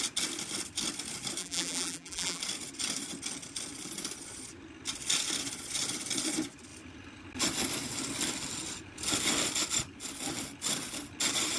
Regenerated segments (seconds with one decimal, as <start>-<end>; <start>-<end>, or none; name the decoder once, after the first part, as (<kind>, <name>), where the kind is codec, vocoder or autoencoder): 1.4-2.4 (vocoder, BigVGAN v2)